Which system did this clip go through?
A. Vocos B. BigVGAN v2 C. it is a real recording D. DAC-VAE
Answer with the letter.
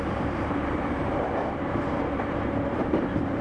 B